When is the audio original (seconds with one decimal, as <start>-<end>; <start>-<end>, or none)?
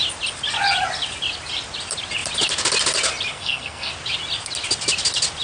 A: 0.0-3.3; 3.9-5.4